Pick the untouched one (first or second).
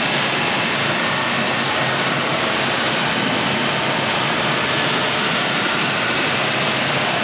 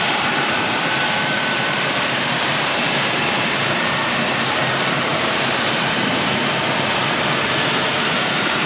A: first